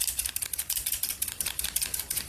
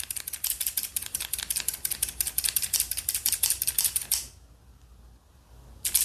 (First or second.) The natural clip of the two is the second